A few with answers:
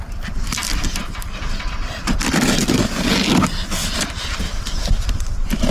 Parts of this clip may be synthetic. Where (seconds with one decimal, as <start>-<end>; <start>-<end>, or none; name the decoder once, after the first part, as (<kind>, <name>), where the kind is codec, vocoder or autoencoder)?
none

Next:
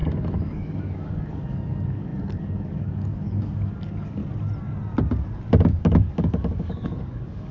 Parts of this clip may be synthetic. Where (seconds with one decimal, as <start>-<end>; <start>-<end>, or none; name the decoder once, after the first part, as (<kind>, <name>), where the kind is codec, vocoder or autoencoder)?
0.0-4.2 (codec, DAC); 5.8-7.5

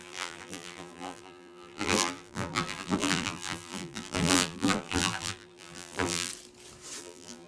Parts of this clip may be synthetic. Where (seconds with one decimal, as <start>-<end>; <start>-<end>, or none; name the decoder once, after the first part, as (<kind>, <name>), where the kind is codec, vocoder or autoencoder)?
0.0-6.3 (vocoder, BigVGAN v2); 7.0-7.5